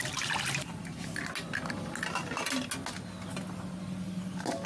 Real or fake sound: real